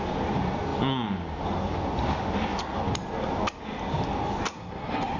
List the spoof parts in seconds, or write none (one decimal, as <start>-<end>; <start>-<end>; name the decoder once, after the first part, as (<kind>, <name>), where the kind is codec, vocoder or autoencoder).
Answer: 4.5-5.2 (codec, SNAC)